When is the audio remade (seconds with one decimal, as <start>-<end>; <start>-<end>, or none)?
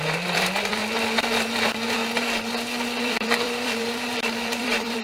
0.0-0.8; 1.6-2.0; 3.0-5.0